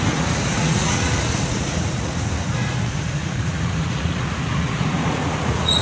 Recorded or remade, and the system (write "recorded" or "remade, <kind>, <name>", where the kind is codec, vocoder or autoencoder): remade, vocoder, Vocos